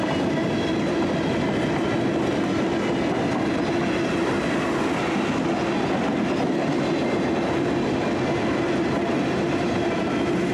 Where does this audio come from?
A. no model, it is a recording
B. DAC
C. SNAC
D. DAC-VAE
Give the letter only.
A